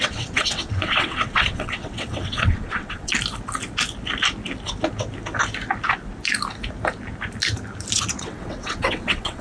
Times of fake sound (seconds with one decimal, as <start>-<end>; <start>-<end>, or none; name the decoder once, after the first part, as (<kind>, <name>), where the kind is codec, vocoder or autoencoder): 0.0-3.1 (vocoder, WaveNeXt); 8.1-9.4